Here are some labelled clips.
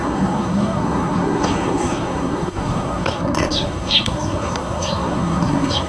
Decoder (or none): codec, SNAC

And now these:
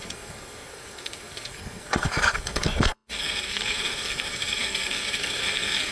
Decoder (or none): codec, SNAC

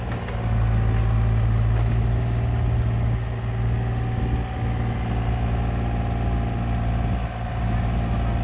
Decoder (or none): none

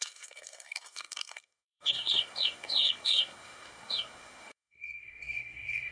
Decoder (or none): codec, SNAC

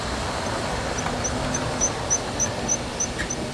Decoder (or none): none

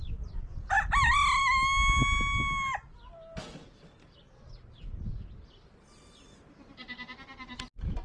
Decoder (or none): none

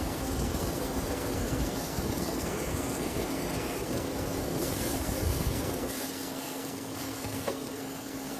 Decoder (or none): codec, SNAC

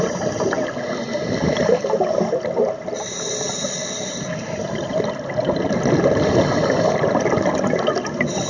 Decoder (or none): none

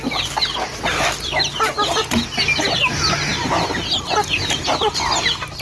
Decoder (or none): none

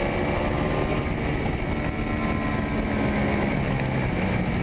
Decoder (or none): none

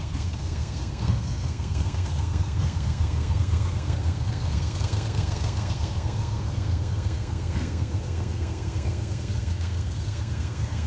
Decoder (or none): codec, SNAC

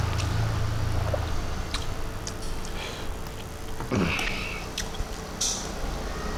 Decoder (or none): none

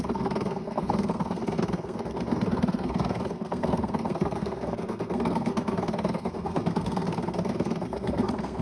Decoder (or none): codec, SNAC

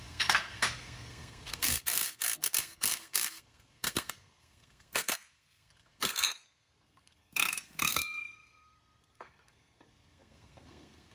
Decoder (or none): codec, SNAC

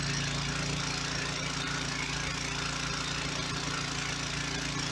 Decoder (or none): none